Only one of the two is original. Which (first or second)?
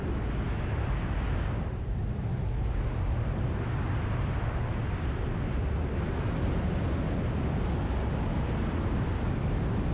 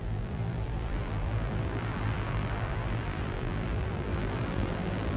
first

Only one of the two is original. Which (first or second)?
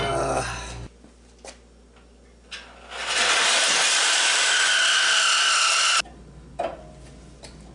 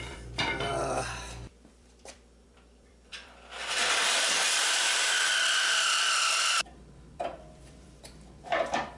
first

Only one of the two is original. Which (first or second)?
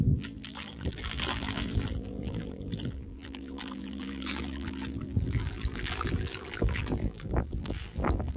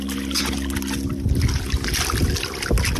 second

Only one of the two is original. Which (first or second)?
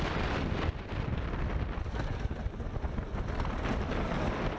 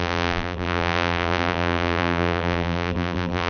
first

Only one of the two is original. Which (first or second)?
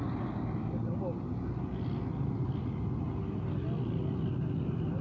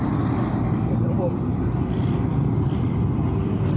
first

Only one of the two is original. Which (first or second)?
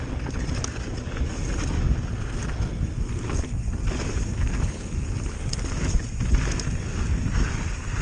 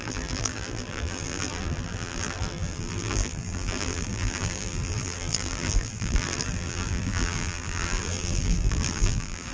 first